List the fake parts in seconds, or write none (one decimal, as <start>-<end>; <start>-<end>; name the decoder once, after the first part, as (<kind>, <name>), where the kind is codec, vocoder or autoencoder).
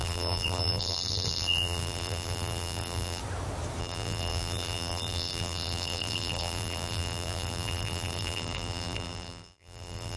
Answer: 0.0-3.2 (vocoder, BigVGAN v2); 3.8-10.2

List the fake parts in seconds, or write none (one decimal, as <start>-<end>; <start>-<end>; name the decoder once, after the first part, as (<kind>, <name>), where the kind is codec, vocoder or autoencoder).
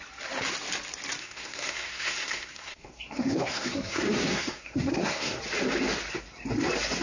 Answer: 1.2-5.4 (codec, SNAC)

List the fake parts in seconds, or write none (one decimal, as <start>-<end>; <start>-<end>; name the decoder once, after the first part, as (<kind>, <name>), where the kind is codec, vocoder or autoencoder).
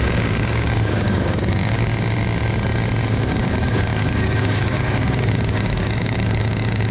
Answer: 0.0-1.9 (codec, DAC); 3.1-6.9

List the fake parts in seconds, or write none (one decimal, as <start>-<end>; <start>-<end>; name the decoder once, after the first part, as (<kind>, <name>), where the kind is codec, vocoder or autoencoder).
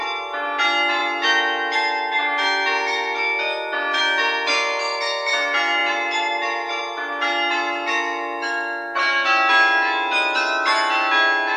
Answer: none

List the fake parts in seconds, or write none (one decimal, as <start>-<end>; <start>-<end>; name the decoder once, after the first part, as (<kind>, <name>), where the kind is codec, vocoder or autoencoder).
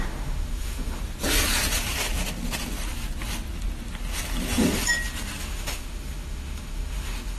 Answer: 0.0-1.0 (autoencoder, DAC-VAE); 5.4-7.4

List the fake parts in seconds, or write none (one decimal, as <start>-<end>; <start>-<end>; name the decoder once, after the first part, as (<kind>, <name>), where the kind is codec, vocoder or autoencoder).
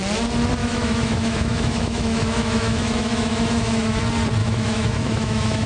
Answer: 0.6-4.0 (autoencoder, DAC-VAE); 4.4-5.7